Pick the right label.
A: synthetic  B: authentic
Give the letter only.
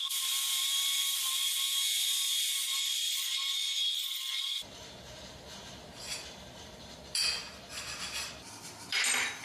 A